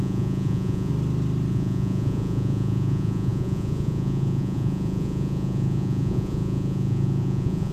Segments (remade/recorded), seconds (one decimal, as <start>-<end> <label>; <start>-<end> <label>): 0.0-0.9 remade; 0.9-1.5 recorded; 1.5-7.7 remade